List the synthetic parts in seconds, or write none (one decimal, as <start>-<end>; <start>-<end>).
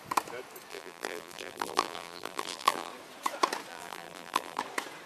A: 0.7-2.9; 3.7-4.6